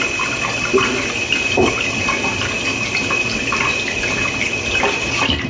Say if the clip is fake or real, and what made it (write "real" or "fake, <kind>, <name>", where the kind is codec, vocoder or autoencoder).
real